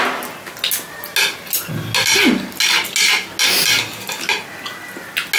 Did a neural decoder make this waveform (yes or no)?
no